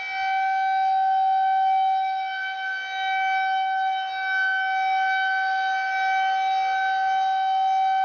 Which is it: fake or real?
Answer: real